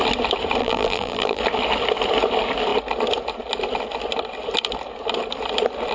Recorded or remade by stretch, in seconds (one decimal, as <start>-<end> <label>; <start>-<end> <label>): 0.0-0.6 recorded; 0.6-1.4 remade; 1.4-5.9 recorded